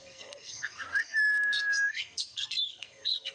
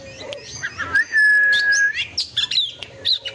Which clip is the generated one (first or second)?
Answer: first